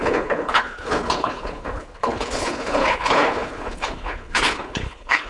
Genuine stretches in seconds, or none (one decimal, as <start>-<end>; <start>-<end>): none